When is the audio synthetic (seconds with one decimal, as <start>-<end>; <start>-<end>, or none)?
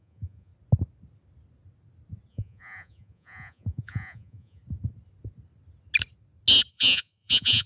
0.0-0.5; 2.3-4.6; 6.7-7.7